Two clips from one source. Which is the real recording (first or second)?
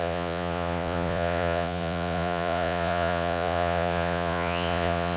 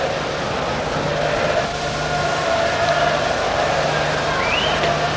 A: second